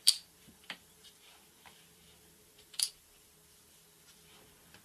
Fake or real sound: fake